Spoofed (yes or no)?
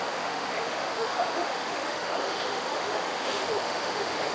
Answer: yes